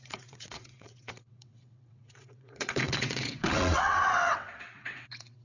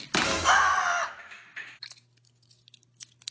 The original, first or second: second